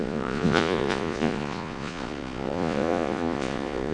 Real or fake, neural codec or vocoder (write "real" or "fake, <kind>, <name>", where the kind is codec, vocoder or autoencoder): fake, vocoder, Vocos